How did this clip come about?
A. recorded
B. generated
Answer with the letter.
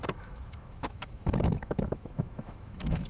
B